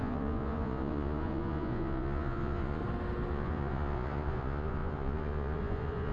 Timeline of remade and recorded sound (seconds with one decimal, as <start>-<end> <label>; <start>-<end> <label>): 0.0-2.8 remade; 2.8-3.3 recorded; 3.3-6.1 remade